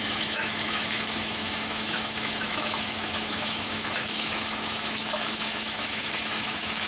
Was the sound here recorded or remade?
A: remade